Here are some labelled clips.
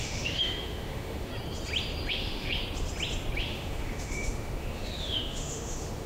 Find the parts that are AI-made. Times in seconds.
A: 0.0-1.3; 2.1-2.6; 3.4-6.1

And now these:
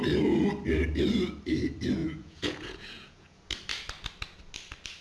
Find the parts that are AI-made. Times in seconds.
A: 2.0-3.4

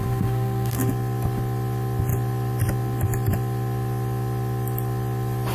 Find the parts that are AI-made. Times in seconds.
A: 0.0-0.9